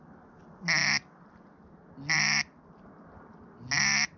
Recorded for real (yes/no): yes